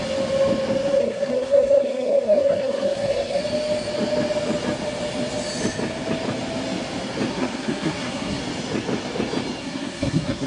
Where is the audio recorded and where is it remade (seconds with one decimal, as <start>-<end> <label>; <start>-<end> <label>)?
0.0-1.0 recorded; 1.0-3.4 remade; 3.4-7.3 recorded; 7.3-8.4 remade; 8.4-9.6 recorded; 9.6-10.5 remade